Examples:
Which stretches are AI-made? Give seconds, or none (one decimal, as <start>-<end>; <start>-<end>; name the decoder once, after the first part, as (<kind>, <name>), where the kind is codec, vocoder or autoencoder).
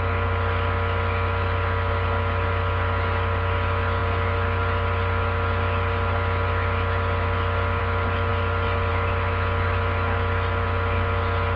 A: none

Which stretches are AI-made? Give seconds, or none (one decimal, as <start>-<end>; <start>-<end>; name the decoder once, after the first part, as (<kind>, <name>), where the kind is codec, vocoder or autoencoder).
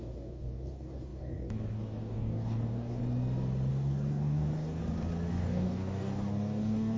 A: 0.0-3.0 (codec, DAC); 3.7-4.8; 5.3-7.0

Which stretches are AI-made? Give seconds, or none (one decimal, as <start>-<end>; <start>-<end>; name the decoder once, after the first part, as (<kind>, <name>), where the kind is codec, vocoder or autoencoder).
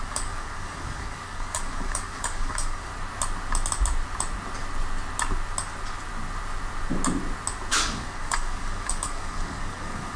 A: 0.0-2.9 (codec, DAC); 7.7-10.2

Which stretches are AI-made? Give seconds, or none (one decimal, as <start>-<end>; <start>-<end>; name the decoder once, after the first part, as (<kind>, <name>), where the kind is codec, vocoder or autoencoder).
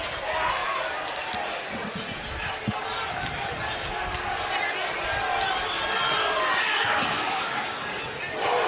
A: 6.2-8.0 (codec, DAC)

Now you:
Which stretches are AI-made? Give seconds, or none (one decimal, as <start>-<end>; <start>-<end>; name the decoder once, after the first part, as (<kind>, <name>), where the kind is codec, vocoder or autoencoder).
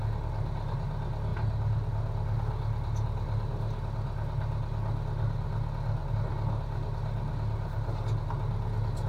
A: none